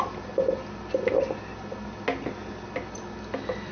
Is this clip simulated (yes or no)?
no